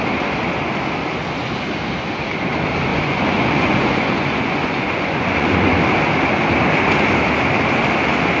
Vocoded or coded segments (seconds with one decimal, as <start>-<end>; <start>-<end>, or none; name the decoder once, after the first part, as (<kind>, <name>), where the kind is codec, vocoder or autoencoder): 2.9-5.8 (vocoder, Vocos)